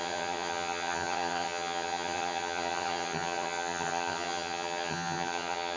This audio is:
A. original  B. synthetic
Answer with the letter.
B